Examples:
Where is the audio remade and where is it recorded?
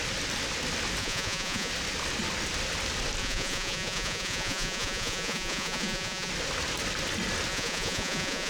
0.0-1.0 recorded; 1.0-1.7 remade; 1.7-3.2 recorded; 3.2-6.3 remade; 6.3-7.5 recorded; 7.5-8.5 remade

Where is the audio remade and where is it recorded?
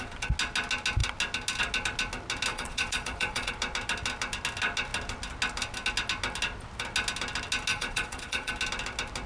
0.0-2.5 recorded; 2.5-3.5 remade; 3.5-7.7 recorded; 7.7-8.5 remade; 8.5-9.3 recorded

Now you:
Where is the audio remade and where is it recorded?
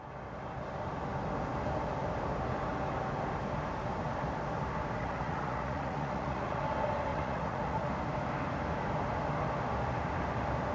0.0-5.0 recorded; 5.0-6.6 remade; 6.6-7.1 recorded; 7.1-7.9 remade; 7.9-10.7 recorded